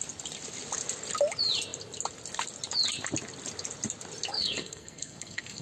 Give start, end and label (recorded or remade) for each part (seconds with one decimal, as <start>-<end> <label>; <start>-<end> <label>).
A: 0.0-4.3 recorded; 4.3-5.6 remade